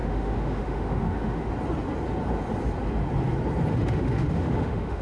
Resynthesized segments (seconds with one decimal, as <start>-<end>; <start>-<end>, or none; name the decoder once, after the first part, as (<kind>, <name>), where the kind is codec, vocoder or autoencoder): 0.0-1.5 (autoencoder, DAC-VAE); 3.7-5.0